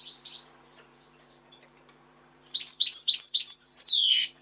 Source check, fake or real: fake